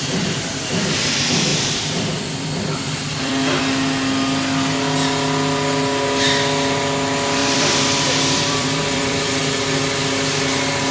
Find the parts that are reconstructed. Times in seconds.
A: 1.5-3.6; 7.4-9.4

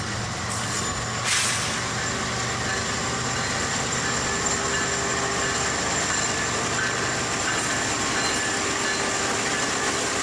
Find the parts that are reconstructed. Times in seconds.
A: none

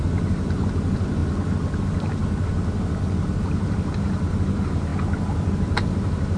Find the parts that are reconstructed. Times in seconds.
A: 0.0-1.2; 1.8-2.2; 3.4-4.9; 5.5-6.4

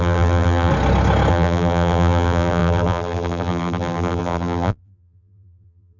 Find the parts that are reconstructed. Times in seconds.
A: 0.0-0.7; 1.3-6.0

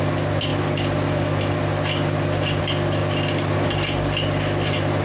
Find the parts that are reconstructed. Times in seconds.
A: none

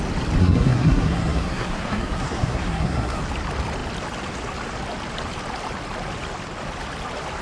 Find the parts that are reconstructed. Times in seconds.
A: 0.4-3.2

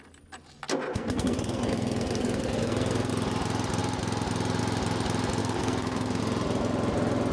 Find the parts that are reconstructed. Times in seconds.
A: 0.9-3.1; 5.4-6.2

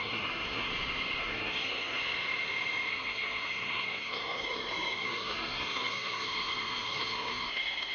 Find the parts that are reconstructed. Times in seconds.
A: 0.0-0.7; 1.2-2.0; 2.9-7.9